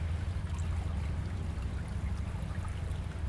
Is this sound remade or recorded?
recorded